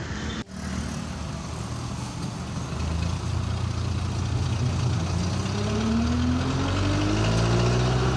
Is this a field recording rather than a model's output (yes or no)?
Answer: yes